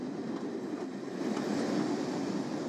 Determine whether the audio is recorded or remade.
recorded